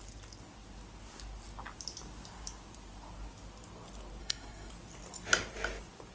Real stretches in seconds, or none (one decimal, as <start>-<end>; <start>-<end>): 0.0-4.2; 4.7-6.1